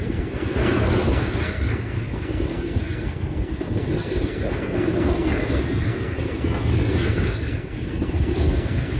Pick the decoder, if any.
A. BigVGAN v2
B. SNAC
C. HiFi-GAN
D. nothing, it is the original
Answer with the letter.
B